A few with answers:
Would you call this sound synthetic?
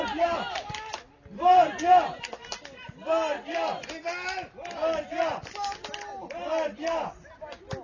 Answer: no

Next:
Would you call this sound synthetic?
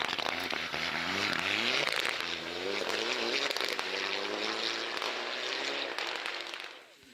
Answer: no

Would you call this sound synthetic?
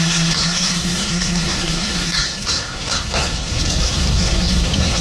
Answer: yes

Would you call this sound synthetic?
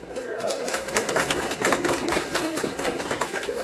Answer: yes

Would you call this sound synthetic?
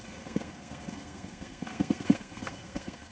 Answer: yes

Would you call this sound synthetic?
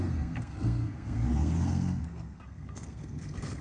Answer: yes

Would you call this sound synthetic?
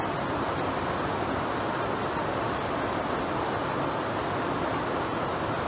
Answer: no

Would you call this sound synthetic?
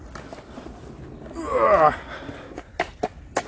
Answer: no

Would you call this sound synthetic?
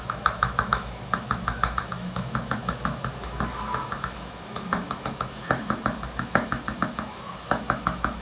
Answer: yes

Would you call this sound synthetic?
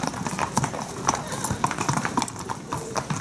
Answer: no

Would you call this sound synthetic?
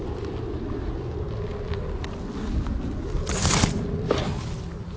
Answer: no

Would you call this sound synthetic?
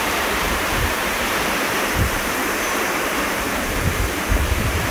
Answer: yes